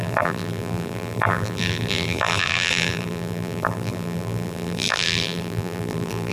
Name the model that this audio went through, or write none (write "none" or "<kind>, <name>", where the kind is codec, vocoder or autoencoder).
vocoder, BigVGAN v2